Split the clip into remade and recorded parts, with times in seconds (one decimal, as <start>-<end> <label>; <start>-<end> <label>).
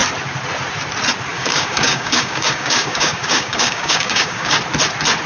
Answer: 0.0-1.3 recorded; 1.3-4.5 remade; 4.5-5.3 recorded